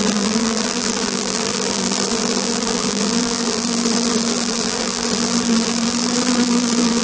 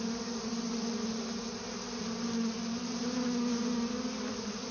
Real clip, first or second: second